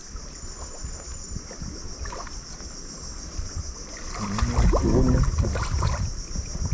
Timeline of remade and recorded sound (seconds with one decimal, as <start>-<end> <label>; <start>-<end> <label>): 0.0-6.7 recorded